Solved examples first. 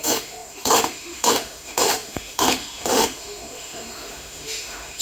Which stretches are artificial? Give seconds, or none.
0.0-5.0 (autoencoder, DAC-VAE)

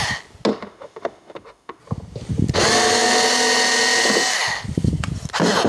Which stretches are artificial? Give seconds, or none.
0.5-1.8 (autoencoder, DAC-VAE)

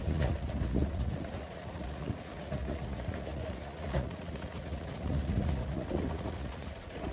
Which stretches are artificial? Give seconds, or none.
0.0-7.1 (vocoder, Vocos)